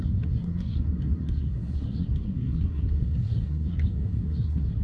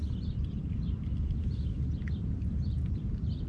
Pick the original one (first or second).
second